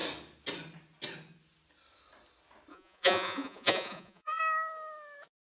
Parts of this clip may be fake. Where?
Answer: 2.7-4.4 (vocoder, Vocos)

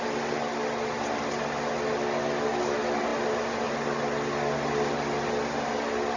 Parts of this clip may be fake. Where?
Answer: none

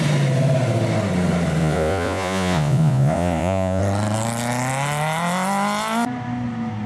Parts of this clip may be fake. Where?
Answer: 1.6-3.8 (vocoder, Vocos)

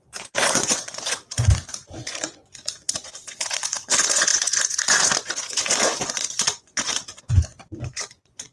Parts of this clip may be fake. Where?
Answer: 0.0-8.5 (vocoder, Vocos)

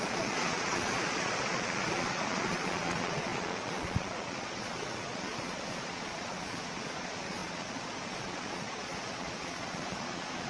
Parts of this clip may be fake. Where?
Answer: 0.0-10.5 (vocoder, Vocos)

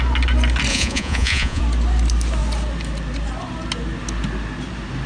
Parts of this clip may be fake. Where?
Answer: 0.7-1.6 (vocoder, Vocos)

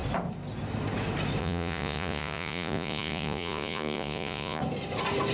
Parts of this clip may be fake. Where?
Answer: 1.4-4.6 (vocoder, Vocos)